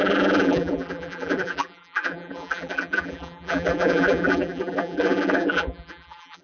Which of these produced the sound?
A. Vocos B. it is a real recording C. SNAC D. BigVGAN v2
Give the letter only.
D